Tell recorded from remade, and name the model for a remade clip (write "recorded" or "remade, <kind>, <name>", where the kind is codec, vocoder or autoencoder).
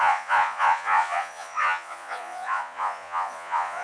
remade, vocoder, Vocos